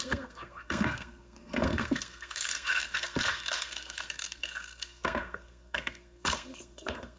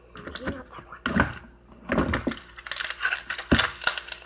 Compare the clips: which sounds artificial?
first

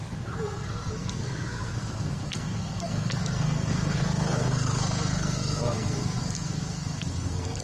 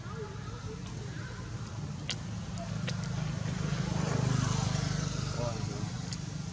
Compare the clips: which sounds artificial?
first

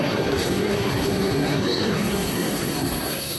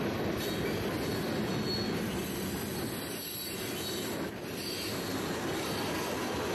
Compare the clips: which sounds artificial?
first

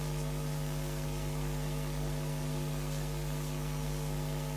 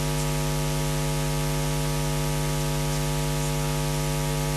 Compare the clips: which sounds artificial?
first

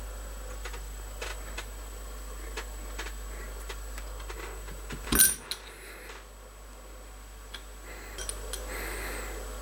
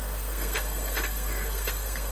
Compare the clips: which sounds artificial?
second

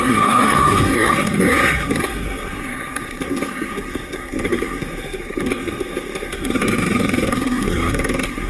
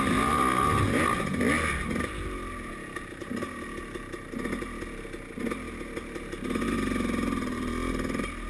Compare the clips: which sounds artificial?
first